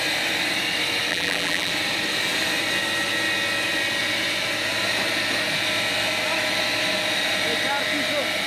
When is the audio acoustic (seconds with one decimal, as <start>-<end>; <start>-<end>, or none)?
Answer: 0.0-1.1; 1.7-8.5